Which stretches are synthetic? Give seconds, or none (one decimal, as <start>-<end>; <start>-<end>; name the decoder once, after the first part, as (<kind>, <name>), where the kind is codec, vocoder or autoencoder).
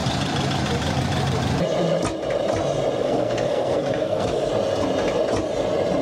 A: 3.0-4.5 (codec, SNAC)